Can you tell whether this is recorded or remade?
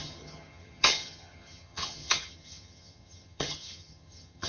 remade